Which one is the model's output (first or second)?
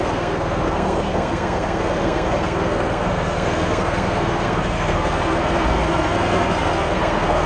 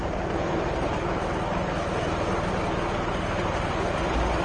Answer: first